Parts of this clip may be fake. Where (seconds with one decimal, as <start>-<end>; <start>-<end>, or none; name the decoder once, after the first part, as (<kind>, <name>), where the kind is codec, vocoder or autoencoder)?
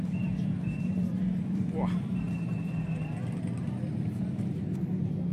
0.0-2.1 (vocoder, BigVGAN v2); 4.0-5.3